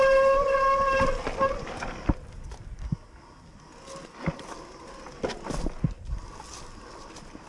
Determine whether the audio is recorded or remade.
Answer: recorded